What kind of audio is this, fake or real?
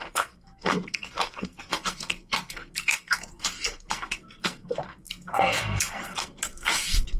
fake